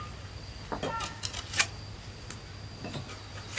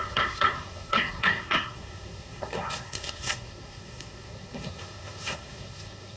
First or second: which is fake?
second